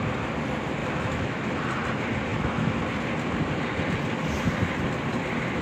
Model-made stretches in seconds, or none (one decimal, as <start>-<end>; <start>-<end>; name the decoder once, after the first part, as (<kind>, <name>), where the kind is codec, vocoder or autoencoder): 0.8-1.5 (autoencoder, DAC-VAE); 2.3-2.8